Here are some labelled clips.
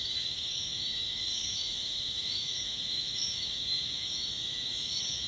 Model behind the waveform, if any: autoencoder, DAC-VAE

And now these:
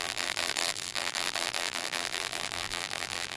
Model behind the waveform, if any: vocoder, BigVGAN v2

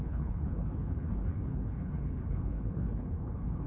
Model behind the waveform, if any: codec, HILCodec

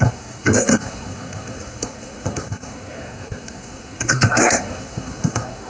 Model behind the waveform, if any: codec, SNAC